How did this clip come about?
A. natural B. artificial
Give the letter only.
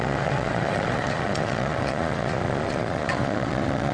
B